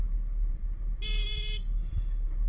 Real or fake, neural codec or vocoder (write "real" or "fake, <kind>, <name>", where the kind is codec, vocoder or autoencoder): real